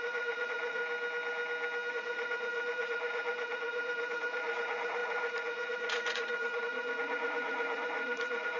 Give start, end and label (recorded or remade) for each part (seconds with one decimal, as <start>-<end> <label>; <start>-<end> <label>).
0.0-0.8 remade; 0.8-1.9 recorded; 1.9-8.6 remade